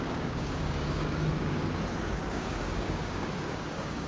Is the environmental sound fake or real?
fake